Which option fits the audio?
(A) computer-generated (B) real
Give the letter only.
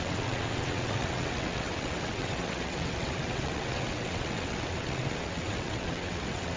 A